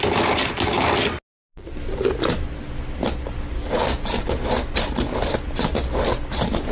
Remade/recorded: recorded